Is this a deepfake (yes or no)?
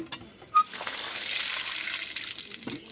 no